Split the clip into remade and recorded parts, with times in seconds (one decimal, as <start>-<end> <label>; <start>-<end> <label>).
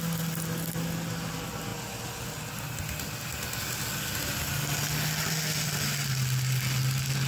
0.0-7.3 recorded